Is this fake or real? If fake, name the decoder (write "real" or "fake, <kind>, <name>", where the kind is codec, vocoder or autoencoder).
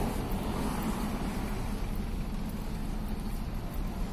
real